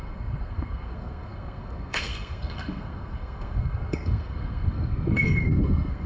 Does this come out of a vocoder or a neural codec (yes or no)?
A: yes